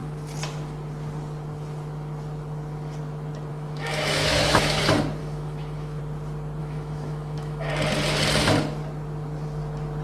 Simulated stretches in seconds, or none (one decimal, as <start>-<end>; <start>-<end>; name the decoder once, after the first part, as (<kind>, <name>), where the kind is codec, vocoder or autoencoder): 3.5-4.8 (autoencoder, DAC-VAE); 5.2-6.0; 6.6-7.7